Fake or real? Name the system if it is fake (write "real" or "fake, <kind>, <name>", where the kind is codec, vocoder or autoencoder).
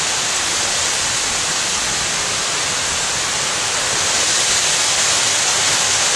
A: real